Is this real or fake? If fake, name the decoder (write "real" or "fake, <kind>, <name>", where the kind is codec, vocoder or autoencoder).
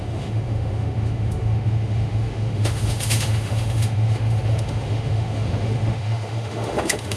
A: fake, autoencoder, DAC-VAE